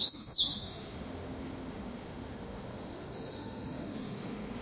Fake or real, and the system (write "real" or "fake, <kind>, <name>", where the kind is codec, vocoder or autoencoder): fake, autoencoder, DAC-VAE